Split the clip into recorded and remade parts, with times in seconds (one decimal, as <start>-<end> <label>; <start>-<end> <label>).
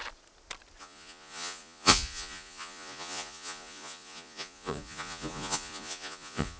0.0-0.8 recorded; 0.8-6.6 remade